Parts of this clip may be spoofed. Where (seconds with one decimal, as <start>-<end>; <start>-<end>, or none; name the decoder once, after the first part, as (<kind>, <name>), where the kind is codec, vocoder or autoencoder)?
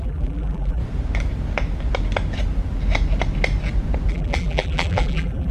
0.0-0.8 (vocoder, BigVGAN v2); 4.1-5.5